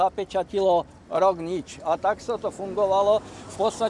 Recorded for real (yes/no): yes